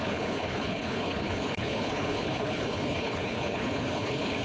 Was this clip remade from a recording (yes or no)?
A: yes